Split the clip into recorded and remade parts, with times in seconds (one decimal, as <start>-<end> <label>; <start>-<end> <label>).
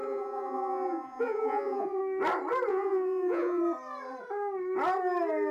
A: 0.0-2.0 remade; 2.0-2.7 recorded; 2.7-3.6 remade; 3.6-5.5 recorded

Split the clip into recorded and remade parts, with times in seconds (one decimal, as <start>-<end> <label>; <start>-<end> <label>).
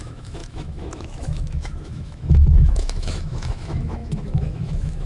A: 0.0-5.1 remade